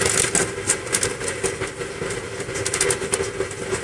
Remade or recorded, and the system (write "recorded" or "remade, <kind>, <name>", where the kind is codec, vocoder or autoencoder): recorded